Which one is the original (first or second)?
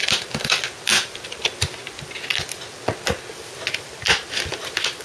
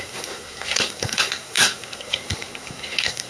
first